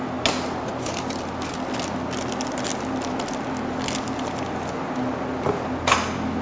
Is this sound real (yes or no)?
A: yes